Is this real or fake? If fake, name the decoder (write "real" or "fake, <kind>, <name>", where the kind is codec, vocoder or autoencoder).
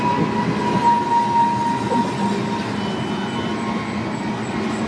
real